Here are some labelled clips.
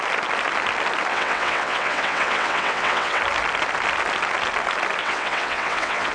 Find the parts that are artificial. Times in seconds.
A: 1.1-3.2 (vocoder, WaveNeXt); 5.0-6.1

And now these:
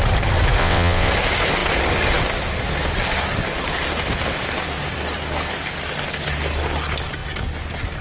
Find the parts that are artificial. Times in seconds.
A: 0.6-1.1 (vocoder, WaveNeXt)